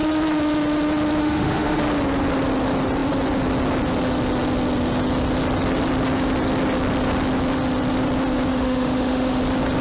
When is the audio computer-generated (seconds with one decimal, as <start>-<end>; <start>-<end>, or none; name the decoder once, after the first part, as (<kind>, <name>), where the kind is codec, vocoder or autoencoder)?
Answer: 1.2-1.8 (autoencoder, DAC-VAE); 8.5-9.4